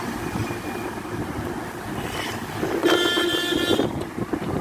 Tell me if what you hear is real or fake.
real